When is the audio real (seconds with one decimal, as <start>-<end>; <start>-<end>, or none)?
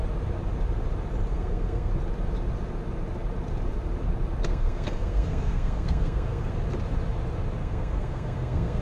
0.0-1.3; 1.9-4.5; 6.5-7.6